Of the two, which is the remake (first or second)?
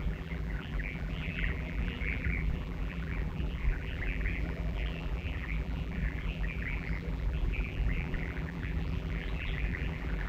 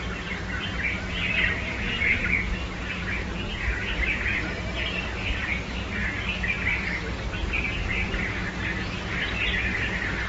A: first